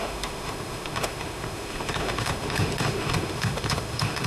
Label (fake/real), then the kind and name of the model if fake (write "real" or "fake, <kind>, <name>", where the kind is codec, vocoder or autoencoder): fake, autoencoder, DAC-VAE